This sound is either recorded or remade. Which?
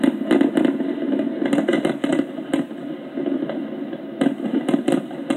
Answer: recorded